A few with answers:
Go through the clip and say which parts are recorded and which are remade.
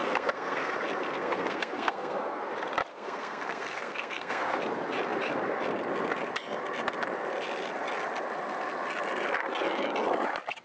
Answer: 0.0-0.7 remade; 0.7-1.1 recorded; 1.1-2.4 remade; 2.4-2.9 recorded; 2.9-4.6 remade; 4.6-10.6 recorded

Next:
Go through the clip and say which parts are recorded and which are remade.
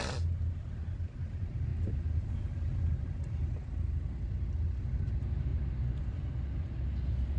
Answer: 0.0-7.4 recorded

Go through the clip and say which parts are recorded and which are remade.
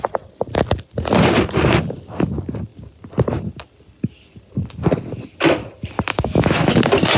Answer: 0.0-6.1 recorded; 6.1-6.8 remade; 6.8-7.2 recorded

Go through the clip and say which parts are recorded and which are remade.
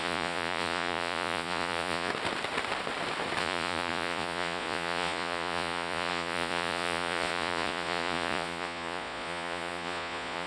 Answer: 0.0-2.1 remade; 2.1-3.4 recorded; 3.4-10.5 remade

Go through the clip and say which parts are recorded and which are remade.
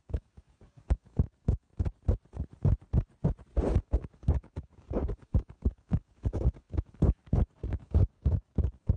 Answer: 0.0-1.7 remade; 1.7-3.8 recorded; 3.8-9.0 remade